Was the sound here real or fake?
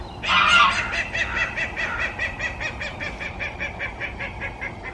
real